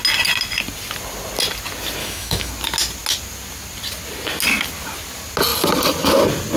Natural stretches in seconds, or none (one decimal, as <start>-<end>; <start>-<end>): 0.0-2.0; 2.5-6.6